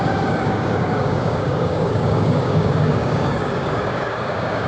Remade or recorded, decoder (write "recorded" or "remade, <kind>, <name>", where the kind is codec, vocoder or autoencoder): remade, codec, DAC